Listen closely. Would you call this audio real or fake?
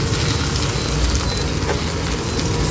real